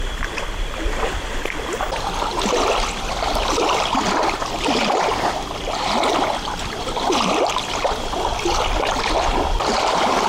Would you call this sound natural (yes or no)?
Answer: yes